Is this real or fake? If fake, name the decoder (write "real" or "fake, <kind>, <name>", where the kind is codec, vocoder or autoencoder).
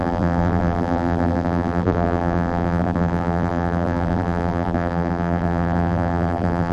fake, vocoder, BigVGAN v2